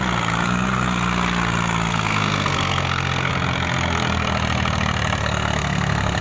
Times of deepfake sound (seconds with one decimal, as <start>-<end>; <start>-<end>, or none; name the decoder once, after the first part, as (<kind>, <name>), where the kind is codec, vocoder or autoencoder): 1.9-3.3 (codec, SNAC); 5.2-6.2